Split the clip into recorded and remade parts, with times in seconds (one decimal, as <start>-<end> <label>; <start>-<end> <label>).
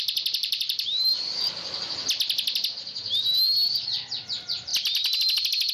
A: 0.0-0.4 recorded; 0.4-1.8 remade; 1.8-5.7 recorded